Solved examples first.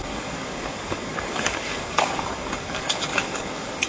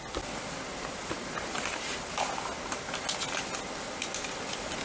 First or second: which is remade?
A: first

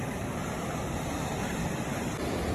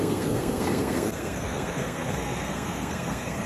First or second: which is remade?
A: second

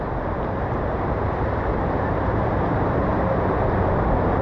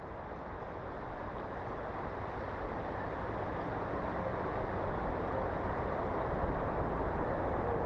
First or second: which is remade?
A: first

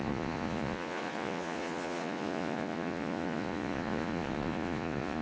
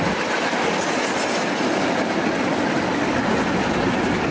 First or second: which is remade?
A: first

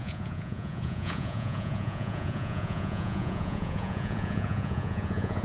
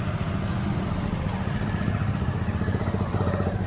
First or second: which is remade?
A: first